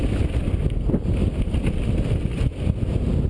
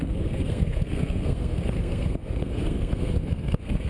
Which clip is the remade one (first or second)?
second